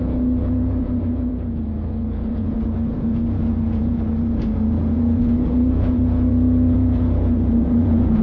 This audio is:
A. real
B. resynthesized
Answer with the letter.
B